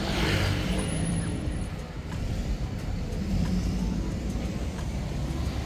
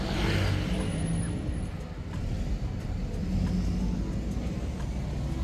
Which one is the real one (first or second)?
second